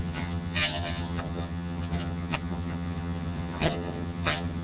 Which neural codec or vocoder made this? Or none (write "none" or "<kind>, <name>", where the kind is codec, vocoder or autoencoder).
vocoder, HiFi-GAN